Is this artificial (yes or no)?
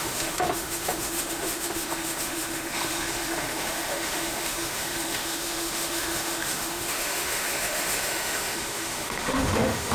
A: yes